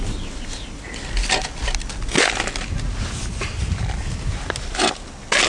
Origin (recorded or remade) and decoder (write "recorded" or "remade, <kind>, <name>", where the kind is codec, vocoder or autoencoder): recorded